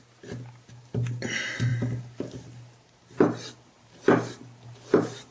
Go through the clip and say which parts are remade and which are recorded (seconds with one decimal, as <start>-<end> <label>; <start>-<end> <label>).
0.0-1.7 recorded; 1.7-5.3 remade